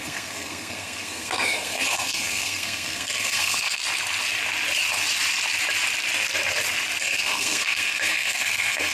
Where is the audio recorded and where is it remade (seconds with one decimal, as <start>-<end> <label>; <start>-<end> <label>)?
0.0-3.8 remade; 3.8-7.0 recorded; 7.0-8.9 remade